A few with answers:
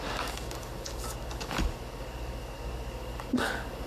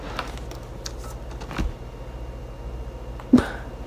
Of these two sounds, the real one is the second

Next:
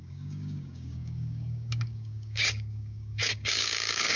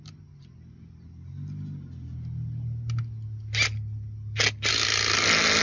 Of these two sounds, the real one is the second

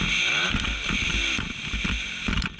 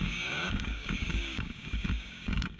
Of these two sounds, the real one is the first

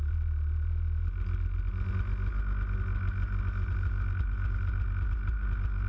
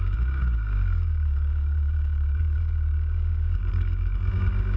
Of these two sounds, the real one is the first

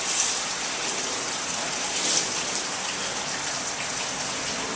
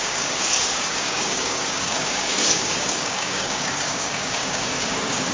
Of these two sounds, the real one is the first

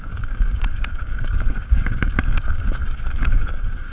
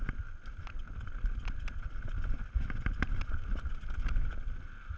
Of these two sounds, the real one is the second